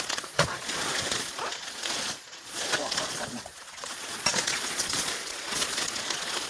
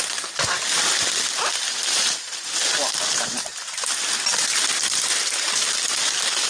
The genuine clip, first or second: second